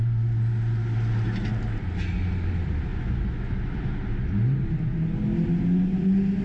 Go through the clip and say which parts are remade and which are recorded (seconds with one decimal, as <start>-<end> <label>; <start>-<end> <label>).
0.0-2.9 recorded; 2.9-3.6 remade; 3.6-6.4 recorded